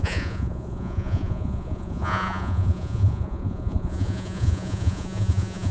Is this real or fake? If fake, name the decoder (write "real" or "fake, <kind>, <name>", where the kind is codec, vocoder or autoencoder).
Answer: fake, vocoder, Vocos